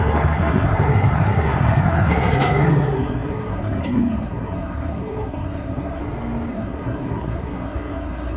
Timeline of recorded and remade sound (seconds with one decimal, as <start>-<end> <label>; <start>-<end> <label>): 0.0-6.0 remade; 6.0-6.5 recorded; 6.5-8.4 remade

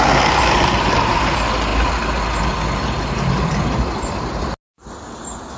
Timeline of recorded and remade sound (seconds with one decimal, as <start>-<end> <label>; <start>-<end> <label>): 0.0-5.6 recorded